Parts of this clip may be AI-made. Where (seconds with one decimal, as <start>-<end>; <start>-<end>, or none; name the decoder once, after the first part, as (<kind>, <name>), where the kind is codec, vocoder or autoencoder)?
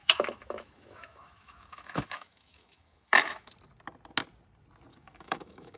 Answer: 0.0-3.5 (autoencoder, DAC-VAE); 4.9-5.8